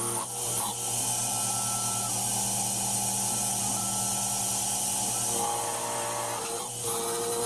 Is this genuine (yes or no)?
yes